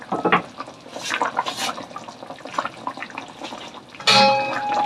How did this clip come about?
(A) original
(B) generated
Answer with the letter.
A